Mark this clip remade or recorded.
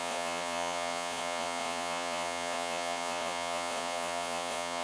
remade